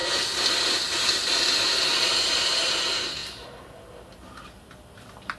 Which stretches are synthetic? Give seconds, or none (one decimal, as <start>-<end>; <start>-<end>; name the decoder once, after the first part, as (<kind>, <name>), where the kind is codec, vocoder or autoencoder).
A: none